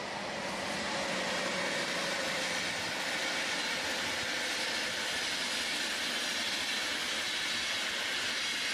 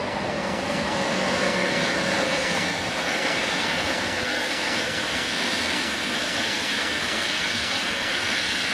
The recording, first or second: first